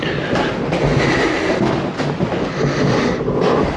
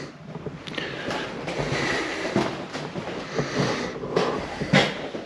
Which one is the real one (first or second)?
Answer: first